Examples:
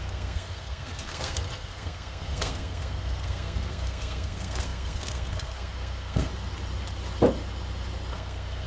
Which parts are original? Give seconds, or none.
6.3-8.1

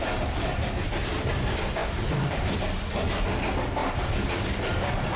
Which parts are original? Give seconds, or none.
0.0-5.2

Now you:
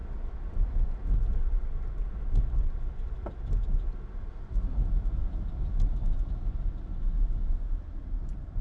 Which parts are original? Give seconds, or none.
0.0-8.6

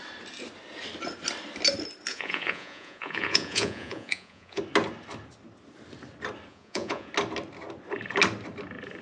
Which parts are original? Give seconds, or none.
0.0-2.1; 4.6-6.5; 7.1-9.0

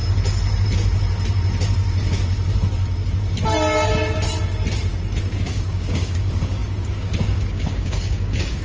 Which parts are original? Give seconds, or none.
0.0-5.2

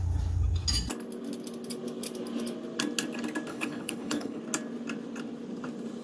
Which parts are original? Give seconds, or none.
0.0-3.5; 4.4-6.0